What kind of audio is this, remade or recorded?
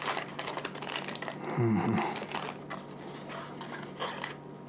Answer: recorded